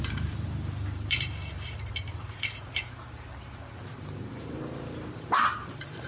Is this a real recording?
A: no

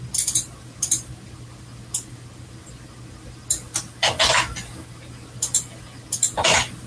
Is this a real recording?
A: yes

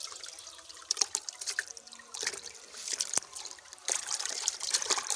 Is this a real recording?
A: no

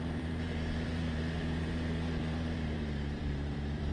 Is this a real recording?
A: no